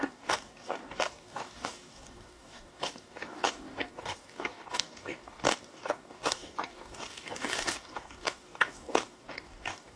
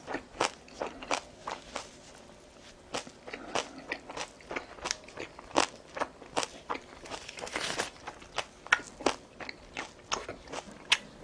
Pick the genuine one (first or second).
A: second